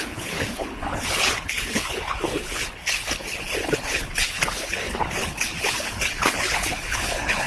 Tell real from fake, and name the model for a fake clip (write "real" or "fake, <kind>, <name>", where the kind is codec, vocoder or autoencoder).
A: fake, codec, HILCodec